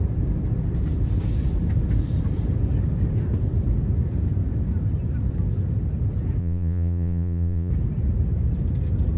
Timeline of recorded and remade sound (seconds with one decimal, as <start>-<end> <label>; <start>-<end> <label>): 0.0-6.4 recorded; 6.4-7.7 remade; 7.7-9.2 recorded